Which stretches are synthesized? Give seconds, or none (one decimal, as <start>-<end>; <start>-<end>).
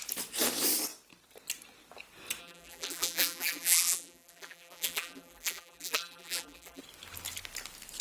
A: 2.4-6.8